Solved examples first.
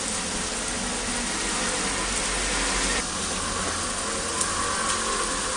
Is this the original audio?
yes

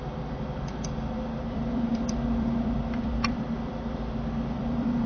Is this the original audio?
no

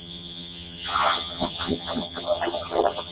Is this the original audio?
no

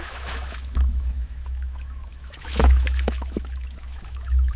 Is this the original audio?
no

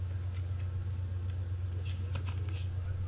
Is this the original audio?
yes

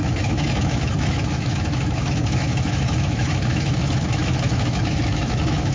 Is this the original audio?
no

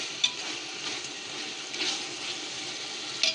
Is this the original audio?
yes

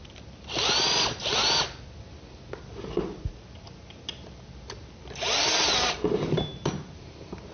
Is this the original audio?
yes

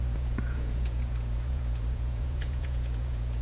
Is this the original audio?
no